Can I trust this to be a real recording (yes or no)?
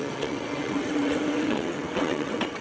no